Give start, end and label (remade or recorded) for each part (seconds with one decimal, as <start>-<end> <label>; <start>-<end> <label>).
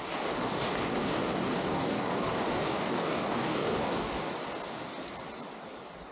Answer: 0.0-1.0 recorded; 1.0-4.1 remade; 4.1-6.1 recorded